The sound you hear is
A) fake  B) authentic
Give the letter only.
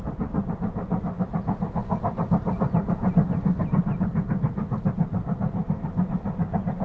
B